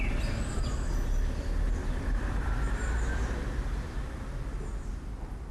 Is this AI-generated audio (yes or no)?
no